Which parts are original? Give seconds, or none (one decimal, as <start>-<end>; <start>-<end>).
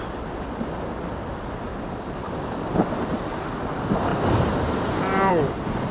0.0-5.9